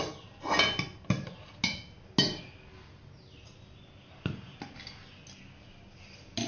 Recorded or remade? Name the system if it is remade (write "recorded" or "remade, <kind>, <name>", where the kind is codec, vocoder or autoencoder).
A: recorded